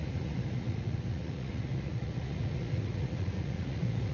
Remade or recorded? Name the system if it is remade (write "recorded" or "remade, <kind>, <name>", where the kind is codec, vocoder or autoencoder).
remade, vocoder, Vocos